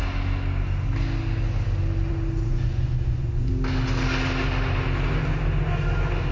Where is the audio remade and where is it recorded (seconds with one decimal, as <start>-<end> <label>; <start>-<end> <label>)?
0.0-2.5 recorded; 2.5-3.5 remade; 3.5-6.3 recorded